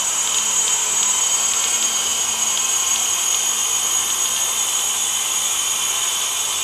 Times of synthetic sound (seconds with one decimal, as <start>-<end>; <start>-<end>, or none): none